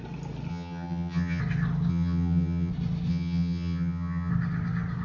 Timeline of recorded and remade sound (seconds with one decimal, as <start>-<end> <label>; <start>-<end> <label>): 0.0-0.5 recorded; 0.5-1.4 remade; 1.4-1.9 recorded; 1.9-2.7 remade; 2.7-3.1 recorded; 3.1-4.3 remade; 4.3-5.0 recorded